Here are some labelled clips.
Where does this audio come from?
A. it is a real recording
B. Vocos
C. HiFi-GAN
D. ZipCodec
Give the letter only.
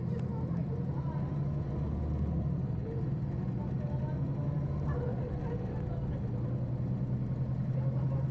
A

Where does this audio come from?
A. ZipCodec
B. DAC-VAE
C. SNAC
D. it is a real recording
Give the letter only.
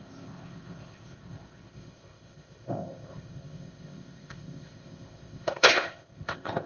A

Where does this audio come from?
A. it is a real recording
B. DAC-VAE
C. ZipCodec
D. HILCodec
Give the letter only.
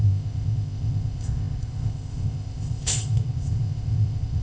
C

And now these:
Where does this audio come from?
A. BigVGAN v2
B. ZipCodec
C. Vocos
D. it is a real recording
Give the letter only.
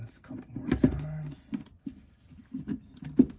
D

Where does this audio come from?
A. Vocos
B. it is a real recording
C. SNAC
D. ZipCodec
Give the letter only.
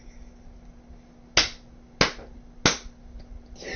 B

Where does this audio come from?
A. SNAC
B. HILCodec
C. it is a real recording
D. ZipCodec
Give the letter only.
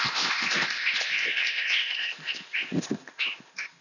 D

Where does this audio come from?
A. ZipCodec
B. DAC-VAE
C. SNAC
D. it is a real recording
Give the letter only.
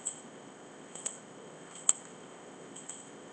A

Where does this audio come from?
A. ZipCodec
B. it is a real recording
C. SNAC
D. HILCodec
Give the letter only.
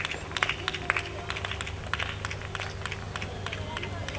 B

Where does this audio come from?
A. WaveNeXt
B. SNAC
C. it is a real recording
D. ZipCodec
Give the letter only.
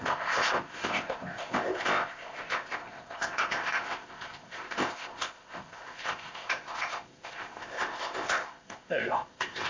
D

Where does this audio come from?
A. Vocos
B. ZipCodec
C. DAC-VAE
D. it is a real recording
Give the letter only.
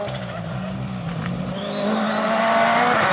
D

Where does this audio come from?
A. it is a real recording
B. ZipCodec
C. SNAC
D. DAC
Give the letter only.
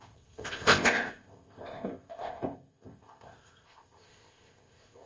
B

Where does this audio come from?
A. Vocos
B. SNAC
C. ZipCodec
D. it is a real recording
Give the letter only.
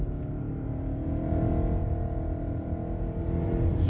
D